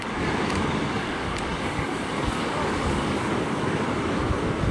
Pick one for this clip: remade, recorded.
remade